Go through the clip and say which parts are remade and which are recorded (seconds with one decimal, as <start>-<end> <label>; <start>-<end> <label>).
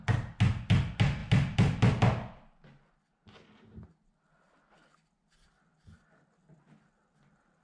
0.0-7.6 recorded